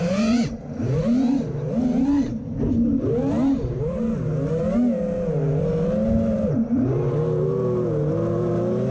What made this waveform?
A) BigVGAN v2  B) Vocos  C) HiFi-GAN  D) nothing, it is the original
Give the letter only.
D